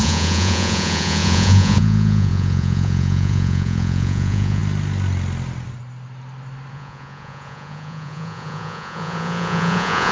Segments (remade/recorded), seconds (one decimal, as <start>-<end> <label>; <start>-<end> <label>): 0.0-4.6 remade; 4.6-6.7 recorded; 6.7-10.1 remade